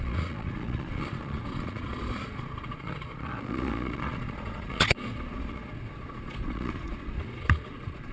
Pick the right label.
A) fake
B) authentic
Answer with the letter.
A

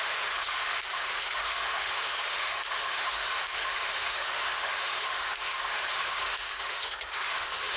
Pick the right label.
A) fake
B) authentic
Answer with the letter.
A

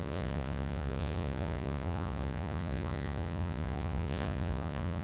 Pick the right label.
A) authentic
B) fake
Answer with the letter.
B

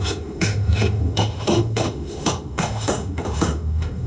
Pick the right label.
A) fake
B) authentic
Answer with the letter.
A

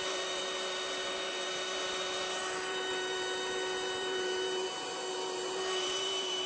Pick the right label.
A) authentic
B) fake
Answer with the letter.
B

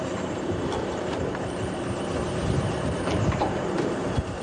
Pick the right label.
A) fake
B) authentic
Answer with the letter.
A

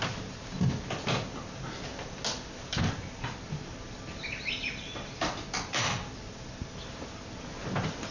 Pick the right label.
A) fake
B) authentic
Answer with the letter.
B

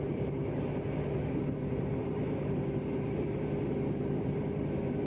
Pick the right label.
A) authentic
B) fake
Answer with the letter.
B